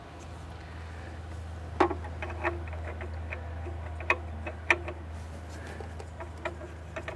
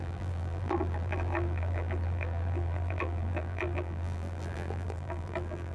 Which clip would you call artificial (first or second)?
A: second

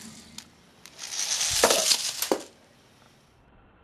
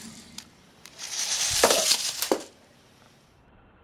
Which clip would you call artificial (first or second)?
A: second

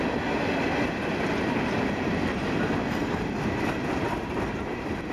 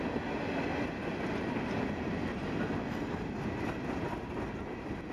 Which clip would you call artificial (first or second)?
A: first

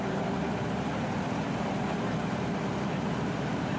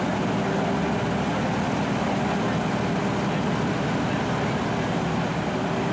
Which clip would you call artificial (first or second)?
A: first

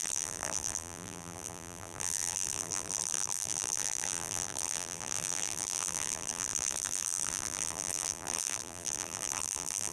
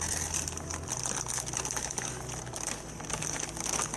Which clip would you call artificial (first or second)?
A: first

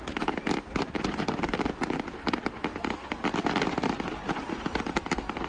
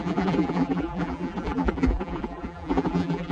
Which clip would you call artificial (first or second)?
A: second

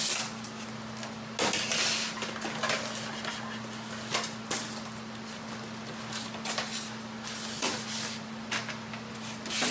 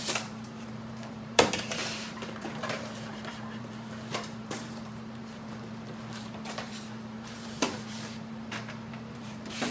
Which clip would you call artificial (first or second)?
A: second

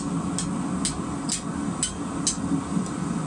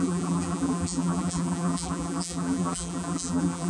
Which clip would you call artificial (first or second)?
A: second